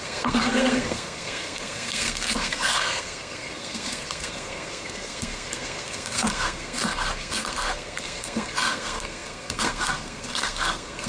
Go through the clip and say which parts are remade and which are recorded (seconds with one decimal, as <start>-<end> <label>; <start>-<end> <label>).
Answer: 0.0-11.1 remade